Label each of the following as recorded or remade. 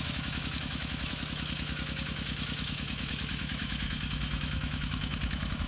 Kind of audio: remade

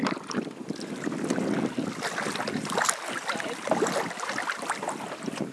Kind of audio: recorded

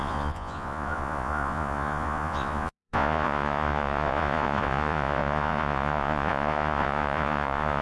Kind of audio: remade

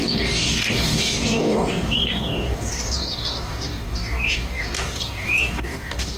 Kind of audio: remade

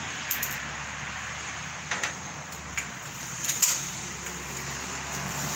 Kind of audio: remade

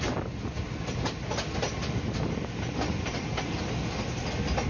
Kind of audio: recorded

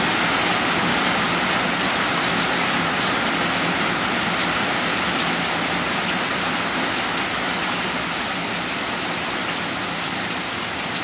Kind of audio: recorded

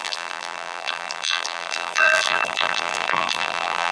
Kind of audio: remade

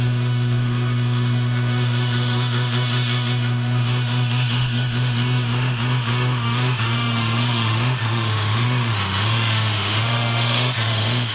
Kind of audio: remade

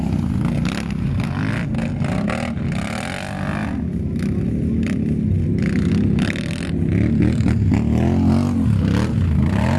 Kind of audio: recorded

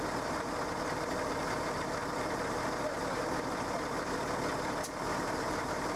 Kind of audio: recorded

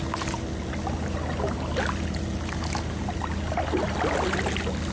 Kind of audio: recorded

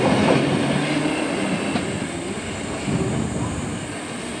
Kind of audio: recorded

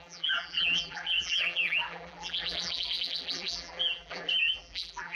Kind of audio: remade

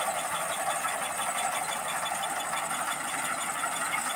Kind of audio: recorded